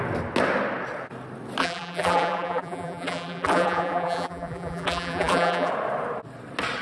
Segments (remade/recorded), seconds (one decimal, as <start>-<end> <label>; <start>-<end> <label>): 0.0-1.6 recorded; 1.6-5.7 remade; 5.7-6.8 recorded